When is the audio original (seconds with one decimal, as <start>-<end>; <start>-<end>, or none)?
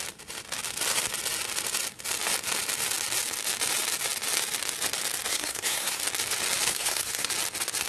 0.0-5.3; 6.0-6.7; 7.3-7.9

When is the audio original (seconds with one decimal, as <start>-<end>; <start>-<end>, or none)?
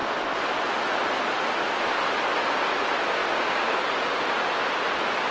0.0-3.2; 3.8-5.3